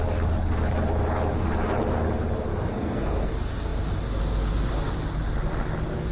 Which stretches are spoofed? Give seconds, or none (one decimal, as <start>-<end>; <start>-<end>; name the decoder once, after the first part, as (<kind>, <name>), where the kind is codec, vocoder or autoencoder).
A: 2.5-3.3 (codec, SNAC)